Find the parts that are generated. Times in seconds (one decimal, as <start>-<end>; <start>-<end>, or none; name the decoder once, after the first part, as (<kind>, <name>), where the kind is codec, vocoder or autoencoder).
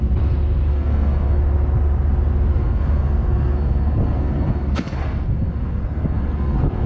0.7-1.4 (codec, SNAC); 2.5-6.9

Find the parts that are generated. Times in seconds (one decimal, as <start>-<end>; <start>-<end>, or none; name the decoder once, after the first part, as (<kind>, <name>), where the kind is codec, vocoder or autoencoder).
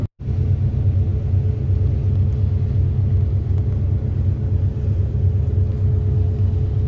4.7-5.5 (vocoder, BigVGAN v2)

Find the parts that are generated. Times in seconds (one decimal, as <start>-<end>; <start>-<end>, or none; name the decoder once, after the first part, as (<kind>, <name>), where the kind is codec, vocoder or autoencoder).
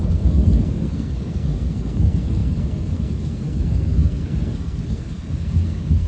0.0-6.1 (codec, SNAC)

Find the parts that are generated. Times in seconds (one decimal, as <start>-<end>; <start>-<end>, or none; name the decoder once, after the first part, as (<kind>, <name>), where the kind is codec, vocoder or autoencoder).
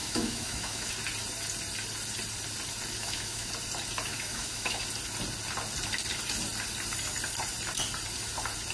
0.0-0.9 (autoencoder, DAC-VAE); 3.0-3.5; 4.1-4.8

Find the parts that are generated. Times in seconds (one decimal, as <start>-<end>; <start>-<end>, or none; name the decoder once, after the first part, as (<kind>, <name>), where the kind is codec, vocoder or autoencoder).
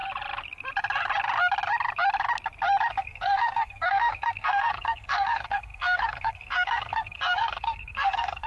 2.9-8.5 (codec, SNAC)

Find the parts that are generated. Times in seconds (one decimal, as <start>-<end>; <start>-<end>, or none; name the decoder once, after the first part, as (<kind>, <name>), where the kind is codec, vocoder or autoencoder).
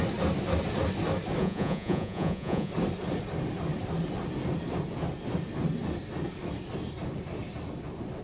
1.4-2.7 (vocoder, Vocos)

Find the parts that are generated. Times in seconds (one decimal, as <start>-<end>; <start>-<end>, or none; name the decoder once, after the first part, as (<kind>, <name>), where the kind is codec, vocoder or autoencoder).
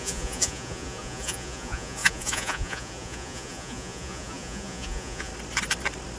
0.0-5.3 (vocoder, Vocos)